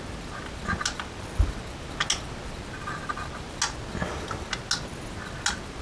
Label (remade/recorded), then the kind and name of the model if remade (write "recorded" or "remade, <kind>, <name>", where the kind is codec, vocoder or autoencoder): recorded